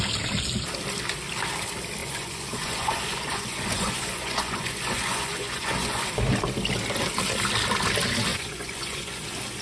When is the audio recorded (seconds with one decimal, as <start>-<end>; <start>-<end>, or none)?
0.0-2.0; 6.1-8.3; 9.2-9.6